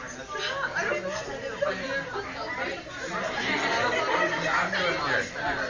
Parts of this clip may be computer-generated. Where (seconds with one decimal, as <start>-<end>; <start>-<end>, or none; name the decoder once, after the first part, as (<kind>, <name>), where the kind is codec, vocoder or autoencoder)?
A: none